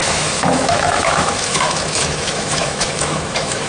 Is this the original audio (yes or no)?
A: no